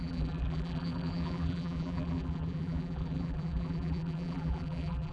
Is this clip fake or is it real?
fake